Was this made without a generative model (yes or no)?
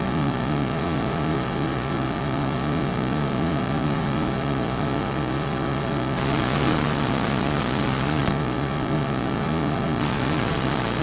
no